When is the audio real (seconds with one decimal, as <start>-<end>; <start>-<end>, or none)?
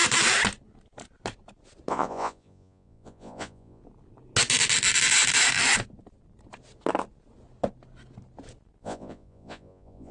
0.0-1.9; 3.8-8.8